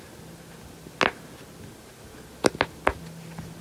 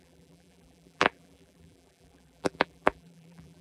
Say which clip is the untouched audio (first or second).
first